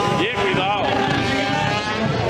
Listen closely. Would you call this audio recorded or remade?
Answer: recorded